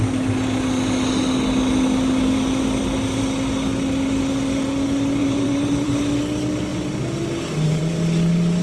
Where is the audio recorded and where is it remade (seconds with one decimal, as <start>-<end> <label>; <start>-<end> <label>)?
0.0-5.2 recorded; 5.2-5.9 remade; 5.9-6.7 recorded; 6.7-7.8 remade; 7.8-8.6 recorded